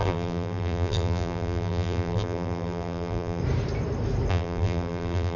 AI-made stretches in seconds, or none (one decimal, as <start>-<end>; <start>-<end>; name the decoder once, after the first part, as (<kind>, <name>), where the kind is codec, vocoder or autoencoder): 0.0-3.4 (vocoder, BigVGAN v2); 4.3-5.4